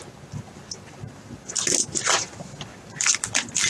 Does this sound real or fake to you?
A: real